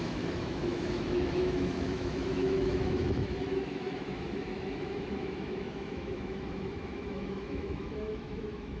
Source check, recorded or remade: remade